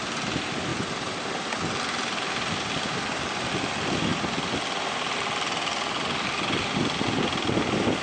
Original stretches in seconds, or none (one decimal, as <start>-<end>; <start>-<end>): 0.0-8.0